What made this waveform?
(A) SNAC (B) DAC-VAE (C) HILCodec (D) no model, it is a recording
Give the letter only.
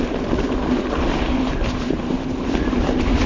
D